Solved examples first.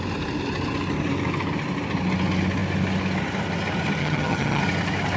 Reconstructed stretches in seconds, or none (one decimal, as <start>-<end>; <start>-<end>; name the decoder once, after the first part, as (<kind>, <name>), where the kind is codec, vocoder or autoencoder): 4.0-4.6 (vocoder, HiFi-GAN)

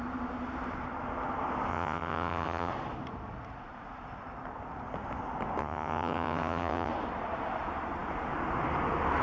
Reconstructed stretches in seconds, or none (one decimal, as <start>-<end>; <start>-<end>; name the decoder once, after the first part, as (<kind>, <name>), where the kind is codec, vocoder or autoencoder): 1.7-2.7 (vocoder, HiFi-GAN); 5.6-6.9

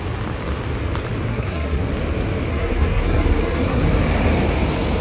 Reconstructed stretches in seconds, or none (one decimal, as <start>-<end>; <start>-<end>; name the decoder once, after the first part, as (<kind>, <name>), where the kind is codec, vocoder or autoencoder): 1.3-1.9 (codec, SNAC); 2.5-3.8

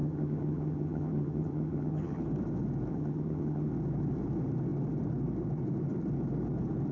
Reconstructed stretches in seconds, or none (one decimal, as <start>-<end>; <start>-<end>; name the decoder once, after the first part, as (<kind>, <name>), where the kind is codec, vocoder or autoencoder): 0.0-2.2 (vocoder, HiFi-GAN); 2.9-3.7

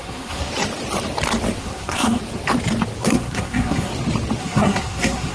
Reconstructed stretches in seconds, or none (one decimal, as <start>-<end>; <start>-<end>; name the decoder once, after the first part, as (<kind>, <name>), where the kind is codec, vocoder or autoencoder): 0.0-0.5 (codec, SNAC); 1.6-2.2; 3.0-3.9; 4.4-5.3